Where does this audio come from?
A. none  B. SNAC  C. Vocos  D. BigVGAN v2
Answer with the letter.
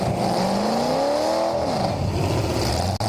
A